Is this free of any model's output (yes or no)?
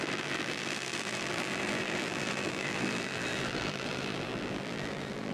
no